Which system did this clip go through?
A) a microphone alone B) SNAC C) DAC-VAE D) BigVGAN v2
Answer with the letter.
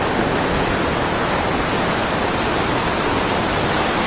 A